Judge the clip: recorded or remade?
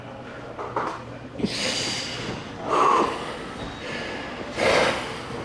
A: recorded